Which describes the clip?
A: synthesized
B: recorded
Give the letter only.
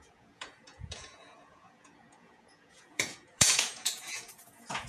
A